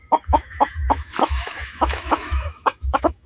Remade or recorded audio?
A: remade